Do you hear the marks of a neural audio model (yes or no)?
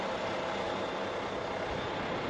no